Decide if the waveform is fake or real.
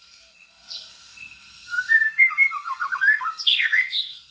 fake